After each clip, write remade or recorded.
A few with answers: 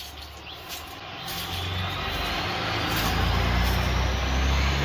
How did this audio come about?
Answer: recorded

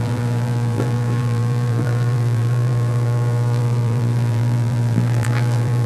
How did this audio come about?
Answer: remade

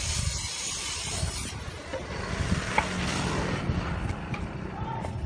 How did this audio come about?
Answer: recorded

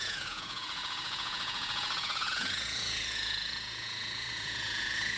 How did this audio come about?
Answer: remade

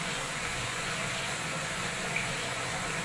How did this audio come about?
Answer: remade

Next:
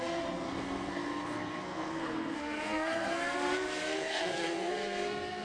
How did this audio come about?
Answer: remade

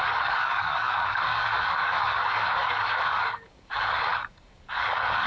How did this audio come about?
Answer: remade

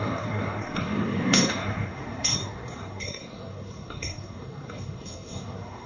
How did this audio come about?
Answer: remade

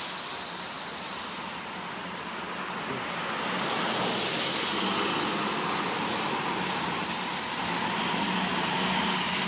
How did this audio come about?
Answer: recorded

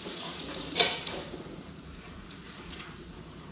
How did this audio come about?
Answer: remade